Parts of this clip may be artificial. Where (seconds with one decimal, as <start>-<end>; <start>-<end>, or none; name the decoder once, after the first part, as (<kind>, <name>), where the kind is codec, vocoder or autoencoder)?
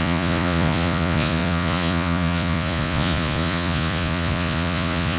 0.0-5.2 (vocoder, Vocos)